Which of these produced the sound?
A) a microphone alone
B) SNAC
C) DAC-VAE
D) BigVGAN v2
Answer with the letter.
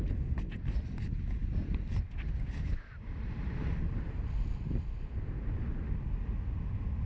A